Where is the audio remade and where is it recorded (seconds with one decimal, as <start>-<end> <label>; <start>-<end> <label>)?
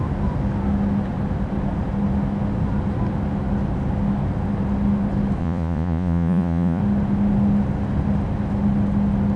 0.0-5.4 recorded; 5.4-6.8 remade; 6.8-9.4 recorded